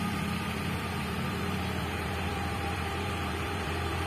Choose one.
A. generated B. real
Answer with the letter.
A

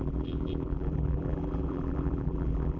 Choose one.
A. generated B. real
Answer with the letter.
A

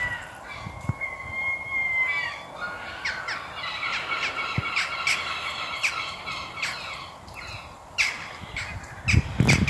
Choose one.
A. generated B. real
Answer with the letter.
B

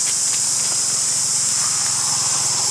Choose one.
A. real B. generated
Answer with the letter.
A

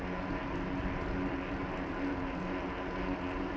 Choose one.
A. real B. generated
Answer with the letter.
A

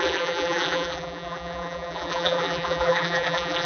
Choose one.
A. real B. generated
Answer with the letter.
B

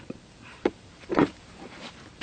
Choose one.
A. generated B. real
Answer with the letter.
A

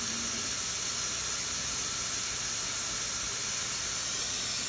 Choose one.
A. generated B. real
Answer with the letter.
B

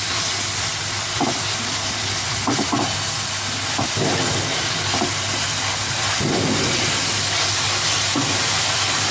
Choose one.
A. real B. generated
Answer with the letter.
B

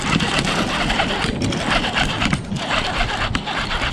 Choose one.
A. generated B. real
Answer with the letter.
B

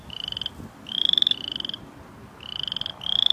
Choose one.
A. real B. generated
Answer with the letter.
A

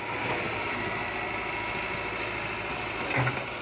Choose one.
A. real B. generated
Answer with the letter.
A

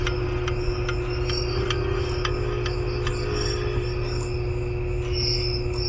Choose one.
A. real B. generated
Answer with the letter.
A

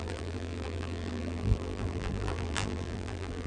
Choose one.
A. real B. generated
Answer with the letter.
B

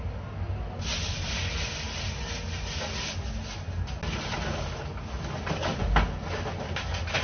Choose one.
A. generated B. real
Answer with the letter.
B